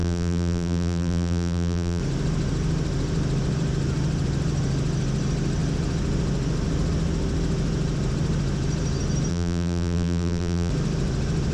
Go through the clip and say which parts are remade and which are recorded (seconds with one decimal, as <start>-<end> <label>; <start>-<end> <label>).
0.0-2.0 remade; 2.0-9.3 recorded; 9.3-10.7 remade; 10.7-11.5 recorded